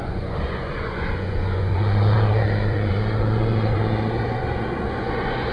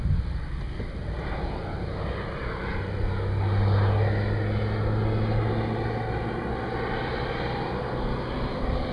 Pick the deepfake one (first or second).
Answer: first